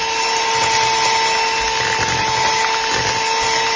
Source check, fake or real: real